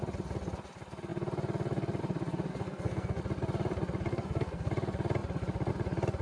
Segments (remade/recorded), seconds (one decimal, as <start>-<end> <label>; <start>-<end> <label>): 0.0-2.5 recorded; 2.5-3.2 remade; 3.2-4.1 recorded; 4.1-4.7 remade; 4.7-6.2 recorded